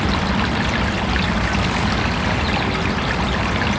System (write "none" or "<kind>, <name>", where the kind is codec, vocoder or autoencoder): none